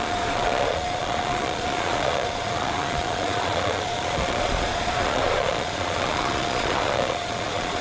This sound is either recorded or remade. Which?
remade